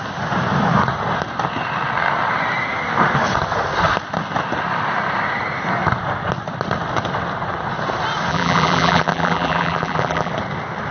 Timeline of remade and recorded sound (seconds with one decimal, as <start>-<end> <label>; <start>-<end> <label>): 0.0-8.3 recorded; 8.3-10.3 remade; 10.3-10.9 recorded